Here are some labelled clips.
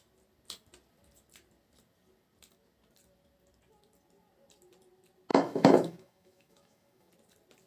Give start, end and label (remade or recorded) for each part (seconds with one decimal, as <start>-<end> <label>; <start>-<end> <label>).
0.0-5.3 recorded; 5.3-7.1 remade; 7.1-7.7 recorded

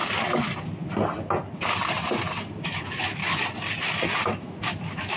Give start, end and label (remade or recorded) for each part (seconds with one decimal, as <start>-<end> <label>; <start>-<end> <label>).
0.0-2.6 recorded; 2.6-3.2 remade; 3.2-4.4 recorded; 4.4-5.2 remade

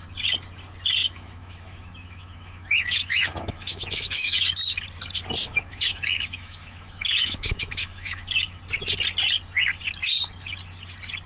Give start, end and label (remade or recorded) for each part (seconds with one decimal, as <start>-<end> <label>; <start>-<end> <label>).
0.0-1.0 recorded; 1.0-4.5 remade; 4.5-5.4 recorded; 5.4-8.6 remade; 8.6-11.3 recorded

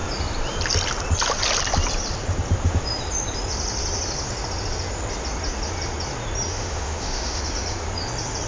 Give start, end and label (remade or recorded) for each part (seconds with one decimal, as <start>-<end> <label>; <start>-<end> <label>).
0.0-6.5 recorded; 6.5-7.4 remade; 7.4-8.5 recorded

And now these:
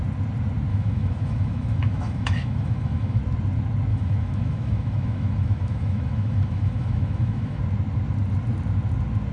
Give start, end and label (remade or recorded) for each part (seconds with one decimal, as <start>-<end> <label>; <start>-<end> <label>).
0.0-0.7 recorded; 0.7-3.2 remade; 3.2-3.9 recorded; 3.9-7.6 remade; 7.6-9.3 recorded